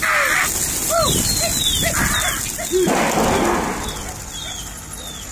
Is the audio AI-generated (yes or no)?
no